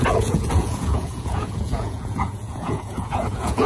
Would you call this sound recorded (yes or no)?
no